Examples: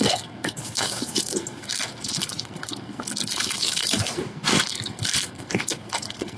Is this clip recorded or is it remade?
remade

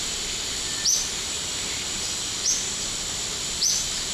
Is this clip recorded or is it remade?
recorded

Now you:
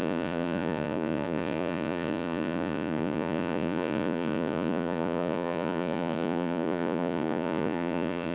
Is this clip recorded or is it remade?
remade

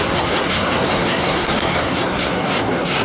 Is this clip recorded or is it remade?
remade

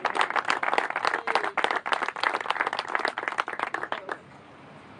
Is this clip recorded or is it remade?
recorded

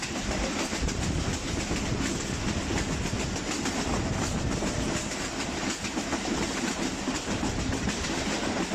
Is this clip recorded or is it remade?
recorded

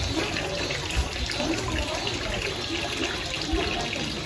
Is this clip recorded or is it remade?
recorded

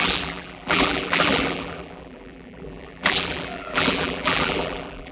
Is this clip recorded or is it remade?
remade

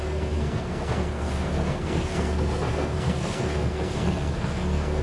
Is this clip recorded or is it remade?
remade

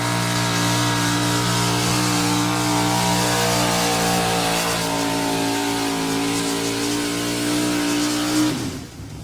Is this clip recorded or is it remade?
recorded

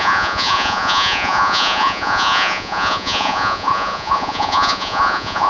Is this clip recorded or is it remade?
remade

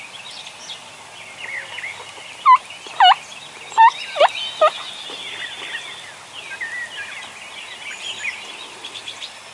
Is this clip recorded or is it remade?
recorded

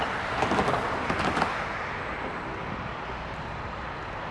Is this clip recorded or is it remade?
recorded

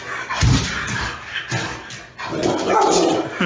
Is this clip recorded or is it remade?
recorded